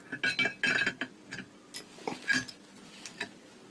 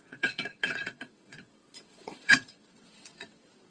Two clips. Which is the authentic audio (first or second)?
first